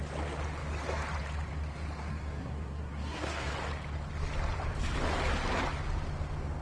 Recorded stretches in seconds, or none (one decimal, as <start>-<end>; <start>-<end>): 0.0-2.1; 3.5-6.6